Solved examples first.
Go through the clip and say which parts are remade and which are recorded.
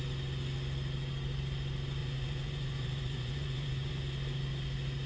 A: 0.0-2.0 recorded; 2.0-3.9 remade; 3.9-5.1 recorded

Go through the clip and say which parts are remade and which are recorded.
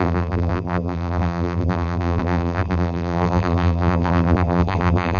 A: 0.0-5.2 remade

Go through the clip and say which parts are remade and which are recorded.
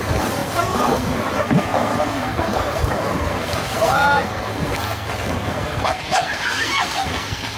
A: 0.0-7.6 remade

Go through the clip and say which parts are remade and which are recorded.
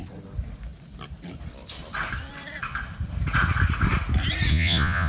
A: 0.0-4.5 recorded; 4.5-5.1 remade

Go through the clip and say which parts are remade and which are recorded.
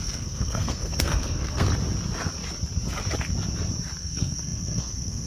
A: 0.0-1.7 remade; 1.7-4.0 recorded; 4.0-5.3 remade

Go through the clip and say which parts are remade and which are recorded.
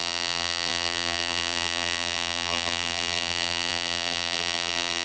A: 0.0-5.0 remade